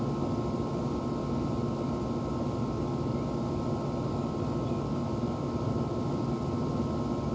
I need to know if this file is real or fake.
real